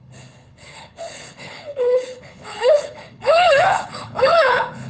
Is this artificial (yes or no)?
yes